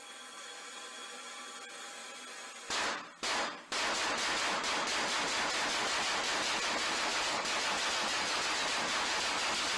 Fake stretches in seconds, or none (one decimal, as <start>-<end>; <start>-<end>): none